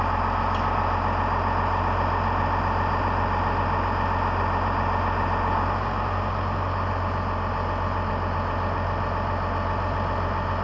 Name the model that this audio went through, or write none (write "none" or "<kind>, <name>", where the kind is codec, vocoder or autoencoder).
none